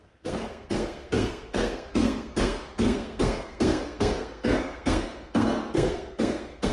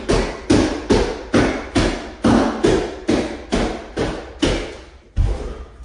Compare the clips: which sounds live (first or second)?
second